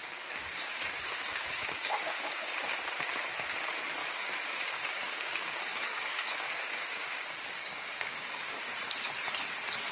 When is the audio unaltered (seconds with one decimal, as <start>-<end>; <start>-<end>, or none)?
2.6-4.0; 8.6-9.9